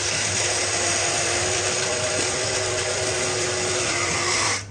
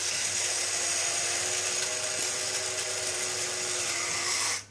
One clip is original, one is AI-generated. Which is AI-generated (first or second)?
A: first